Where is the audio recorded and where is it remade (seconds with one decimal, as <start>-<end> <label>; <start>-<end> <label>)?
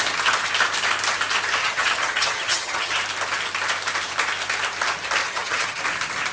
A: 0.0-1.6 recorded; 1.6-2.9 remade; 2.9-5.2 recorded; 5.2-5.8 remade; 5.8-6.3 recorded